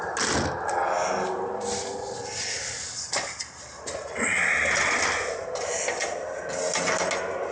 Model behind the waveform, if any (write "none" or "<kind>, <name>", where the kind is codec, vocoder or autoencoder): none